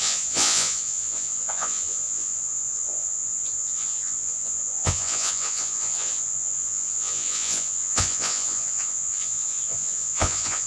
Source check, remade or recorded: remade